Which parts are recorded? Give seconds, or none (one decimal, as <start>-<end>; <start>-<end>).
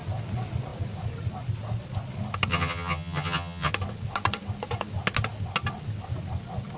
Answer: 0.0-2.5; 3.7-6.8